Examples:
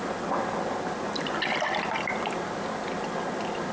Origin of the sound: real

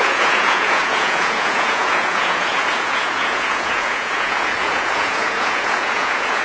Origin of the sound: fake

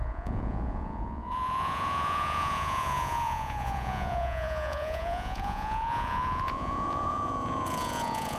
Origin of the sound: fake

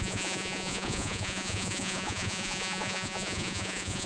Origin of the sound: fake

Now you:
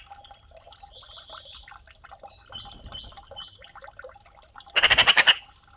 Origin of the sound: real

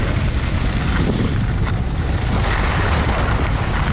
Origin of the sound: real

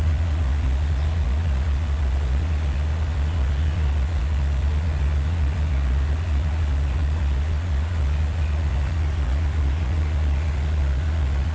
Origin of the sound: fake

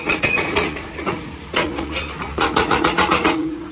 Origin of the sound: fake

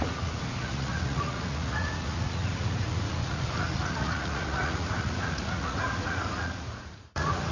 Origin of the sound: fake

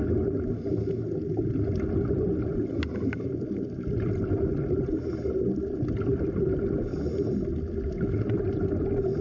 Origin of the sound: real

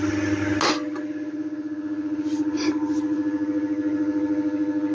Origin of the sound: real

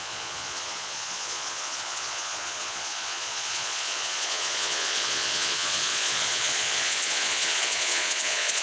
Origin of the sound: fake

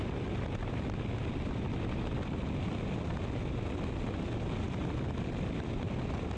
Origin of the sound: real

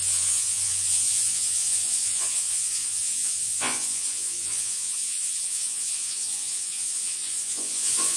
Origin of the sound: fake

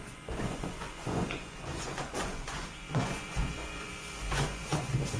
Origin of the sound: fake